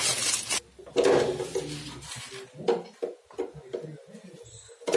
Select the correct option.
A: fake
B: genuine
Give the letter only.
B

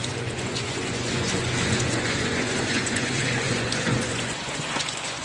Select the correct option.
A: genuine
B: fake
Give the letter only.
B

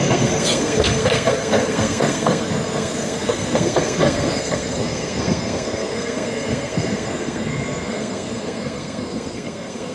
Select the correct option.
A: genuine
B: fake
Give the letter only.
B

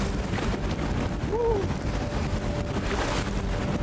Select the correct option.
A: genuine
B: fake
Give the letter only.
A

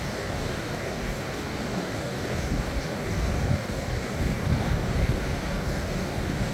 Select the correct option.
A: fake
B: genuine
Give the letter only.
A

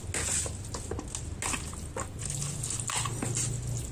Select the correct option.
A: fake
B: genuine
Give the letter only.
B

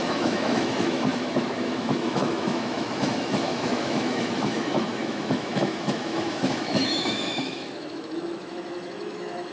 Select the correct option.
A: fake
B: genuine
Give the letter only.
A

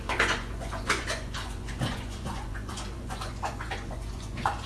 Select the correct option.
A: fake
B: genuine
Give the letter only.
A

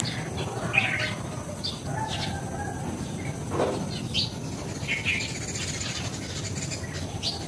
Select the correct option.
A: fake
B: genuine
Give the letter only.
B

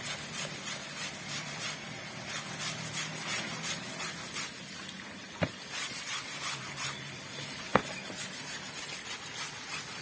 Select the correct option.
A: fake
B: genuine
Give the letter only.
B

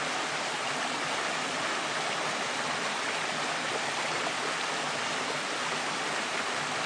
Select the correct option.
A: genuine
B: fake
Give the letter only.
A